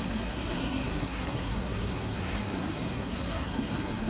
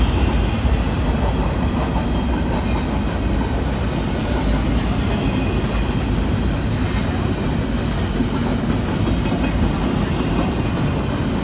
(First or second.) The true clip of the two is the second